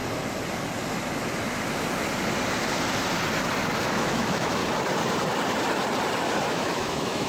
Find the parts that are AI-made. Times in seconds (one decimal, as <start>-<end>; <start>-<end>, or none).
3.8-4.6; 6.5-7.3